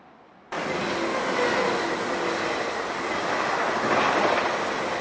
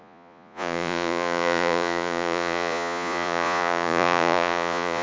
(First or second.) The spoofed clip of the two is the second